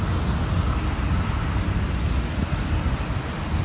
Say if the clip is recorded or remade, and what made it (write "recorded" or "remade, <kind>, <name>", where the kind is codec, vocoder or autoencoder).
recorded